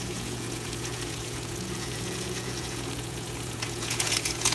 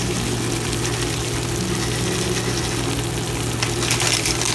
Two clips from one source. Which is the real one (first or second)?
second